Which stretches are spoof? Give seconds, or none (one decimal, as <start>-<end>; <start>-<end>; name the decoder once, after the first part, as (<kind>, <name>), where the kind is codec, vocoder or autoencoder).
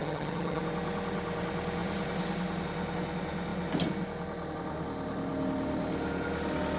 0.0-0.6 (vocoder, HiFi-GAN)